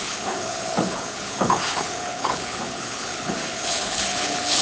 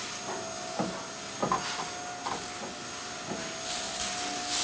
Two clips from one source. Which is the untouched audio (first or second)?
second